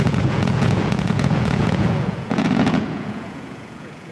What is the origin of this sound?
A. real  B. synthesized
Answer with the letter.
B